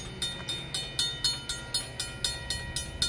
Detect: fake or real real